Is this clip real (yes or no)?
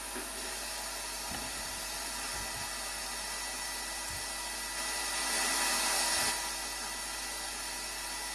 yes